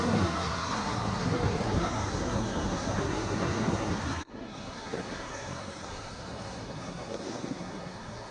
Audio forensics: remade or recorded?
remade